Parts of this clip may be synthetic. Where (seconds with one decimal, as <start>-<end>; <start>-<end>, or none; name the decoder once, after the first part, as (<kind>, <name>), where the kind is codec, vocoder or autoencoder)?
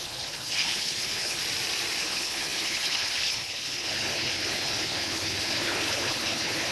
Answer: 0.0-1.4 (codec, HILCodec); 2.0-6.7